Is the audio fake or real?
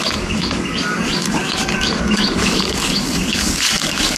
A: fake